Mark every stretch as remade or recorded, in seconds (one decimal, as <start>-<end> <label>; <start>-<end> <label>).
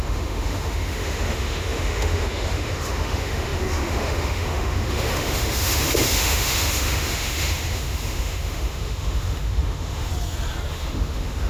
0.0-10.1 remade; 10.1-10.7 recorded; 10.7-11.5 remade